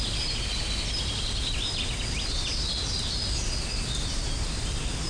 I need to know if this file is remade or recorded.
recorded